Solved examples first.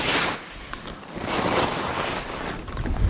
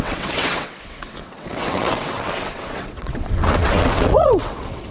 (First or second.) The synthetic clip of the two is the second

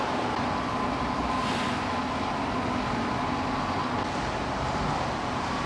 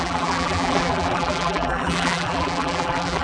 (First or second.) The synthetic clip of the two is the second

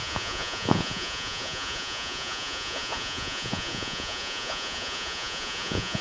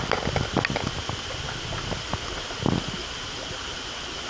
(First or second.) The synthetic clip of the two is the first